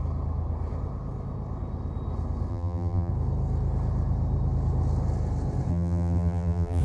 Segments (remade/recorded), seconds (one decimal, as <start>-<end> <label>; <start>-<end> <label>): 0.0-2.5 recorded; 2.5-3.1 remade; 3.1-5.7 recorded; 5.7-6.8 remade